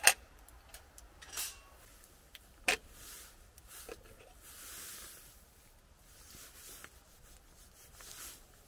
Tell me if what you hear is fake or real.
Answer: real